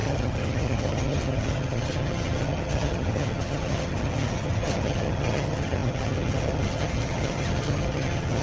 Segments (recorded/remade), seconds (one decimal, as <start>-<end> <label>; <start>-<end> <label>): 0.0-8.4 remade